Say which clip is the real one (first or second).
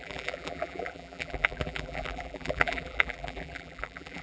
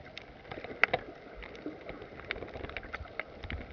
second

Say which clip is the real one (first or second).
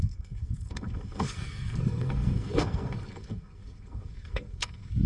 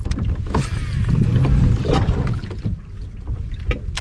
second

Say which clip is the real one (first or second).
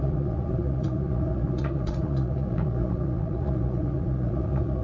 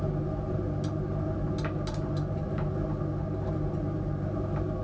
second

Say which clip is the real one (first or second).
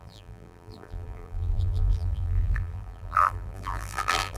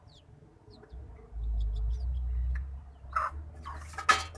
second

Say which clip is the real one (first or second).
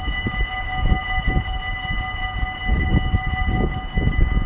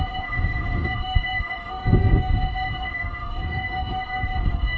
first